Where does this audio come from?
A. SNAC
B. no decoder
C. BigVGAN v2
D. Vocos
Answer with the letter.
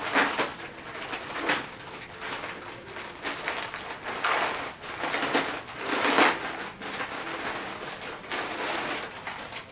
B